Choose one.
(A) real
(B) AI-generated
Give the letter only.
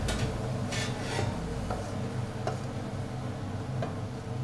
A